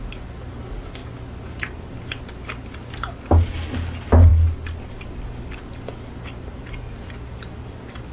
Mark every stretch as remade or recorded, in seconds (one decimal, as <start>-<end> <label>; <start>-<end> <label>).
0.0-8.1 recorded